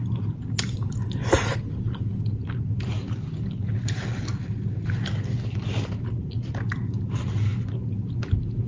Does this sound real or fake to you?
real